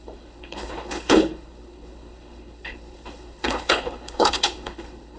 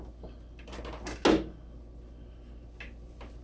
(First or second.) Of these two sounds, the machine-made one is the first